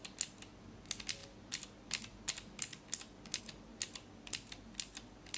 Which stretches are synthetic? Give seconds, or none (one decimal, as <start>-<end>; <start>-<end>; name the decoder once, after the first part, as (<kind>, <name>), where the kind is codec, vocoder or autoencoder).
none